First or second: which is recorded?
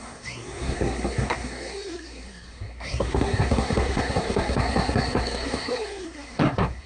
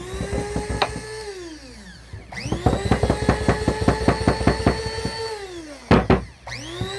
second